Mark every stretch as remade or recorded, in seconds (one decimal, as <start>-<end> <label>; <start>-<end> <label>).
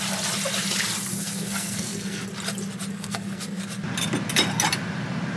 0.0-1.1 recorded; 1.1-2.3 remade; 2.3-2.9 recorded; 2.9-3.6 remade; 3.6-5.4 recorded